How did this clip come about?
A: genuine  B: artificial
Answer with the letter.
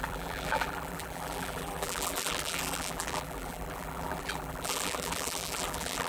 B